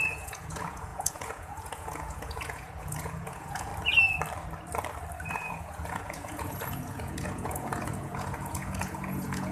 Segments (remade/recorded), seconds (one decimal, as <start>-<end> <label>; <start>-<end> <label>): 0.0-3.7 remade; 3.7-5.3 recorded; 5.3-9.5 remade